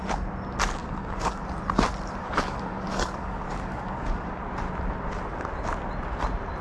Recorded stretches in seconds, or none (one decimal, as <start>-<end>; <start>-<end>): 0.0-0.8; 1.4-2.2; 4.3-6.6